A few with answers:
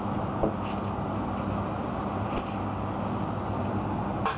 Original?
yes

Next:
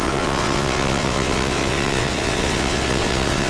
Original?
no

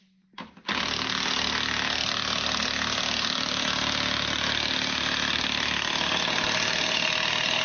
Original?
yes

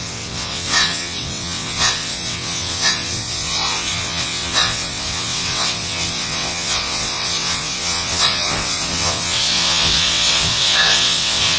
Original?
no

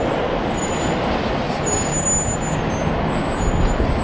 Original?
yes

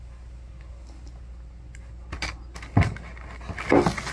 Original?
yes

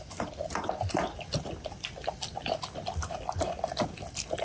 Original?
yes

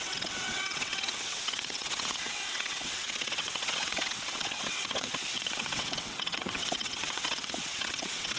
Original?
no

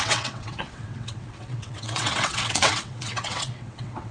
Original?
no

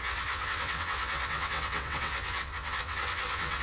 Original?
no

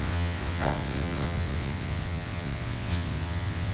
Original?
no